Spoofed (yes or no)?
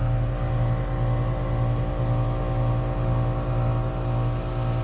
no